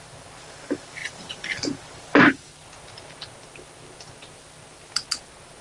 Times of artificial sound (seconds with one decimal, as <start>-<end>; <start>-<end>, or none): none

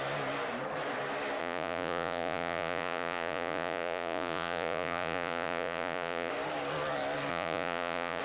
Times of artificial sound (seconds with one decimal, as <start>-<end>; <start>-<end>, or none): 1.4-6.3; 7.3-8.2

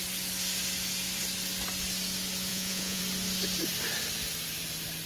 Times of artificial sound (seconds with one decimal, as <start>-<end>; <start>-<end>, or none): 2.5-3.0

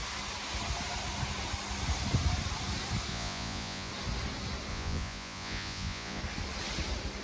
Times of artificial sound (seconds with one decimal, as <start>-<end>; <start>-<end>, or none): 3.1-3.9; 4.7-6.2

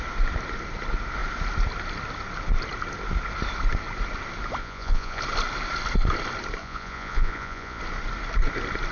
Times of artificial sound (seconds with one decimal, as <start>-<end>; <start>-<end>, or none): 4.6-5.2; 6.6-7.8